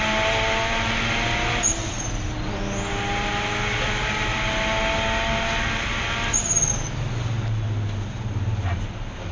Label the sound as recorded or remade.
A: recorded